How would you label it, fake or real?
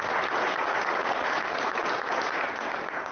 fake